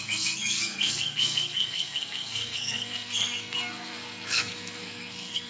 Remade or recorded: remade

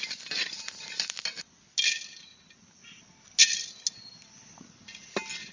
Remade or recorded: recorded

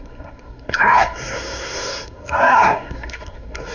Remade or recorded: remade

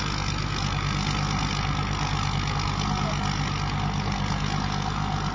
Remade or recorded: recorded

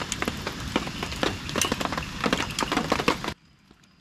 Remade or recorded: recorded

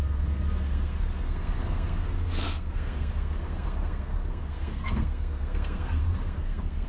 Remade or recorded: remade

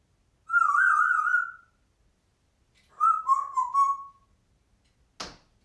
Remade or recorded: recorded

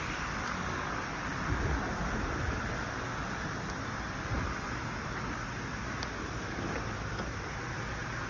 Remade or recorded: recorded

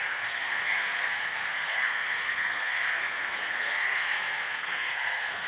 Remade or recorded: remade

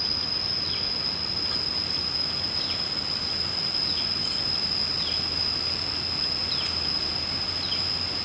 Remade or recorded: recorded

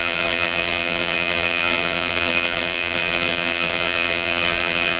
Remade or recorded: remade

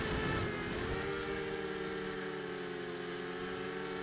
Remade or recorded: recorded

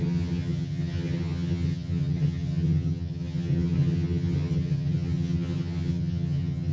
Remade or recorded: remade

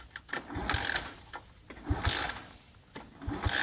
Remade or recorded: recorded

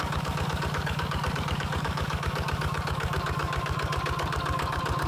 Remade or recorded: remade